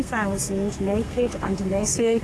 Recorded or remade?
remade